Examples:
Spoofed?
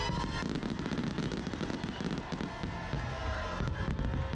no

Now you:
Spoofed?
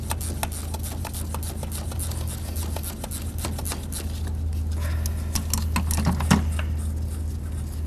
no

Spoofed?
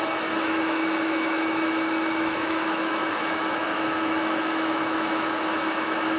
yes